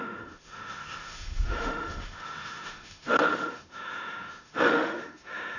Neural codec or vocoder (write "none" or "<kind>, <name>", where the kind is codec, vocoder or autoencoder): autoencoder, DAC-VAE